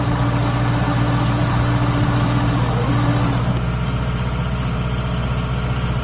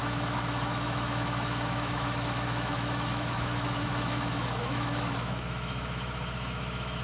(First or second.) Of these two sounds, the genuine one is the first